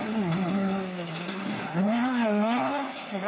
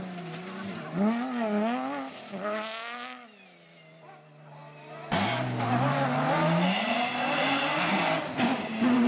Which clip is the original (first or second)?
second